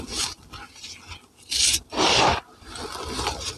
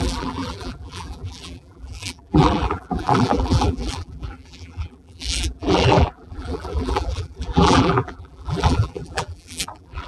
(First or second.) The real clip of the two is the first